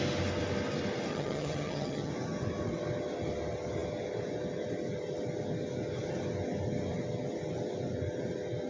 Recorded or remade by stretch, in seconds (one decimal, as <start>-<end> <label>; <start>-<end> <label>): 0.0-1.1 recorded; 1.1-2.1 remade; 2.1-8.7 recorded